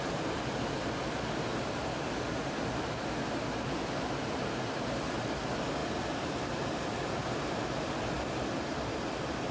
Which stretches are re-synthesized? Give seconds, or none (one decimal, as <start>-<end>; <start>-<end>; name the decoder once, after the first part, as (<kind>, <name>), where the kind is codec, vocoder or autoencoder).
1.5-2.3 (vocoder, BigVGAN v2); 5.8-6.5